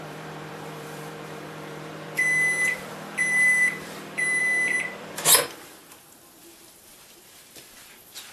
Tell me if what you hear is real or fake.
fake